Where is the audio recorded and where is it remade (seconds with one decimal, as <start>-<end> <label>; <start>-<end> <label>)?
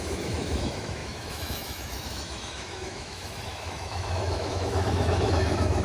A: 0.0-5.8 remade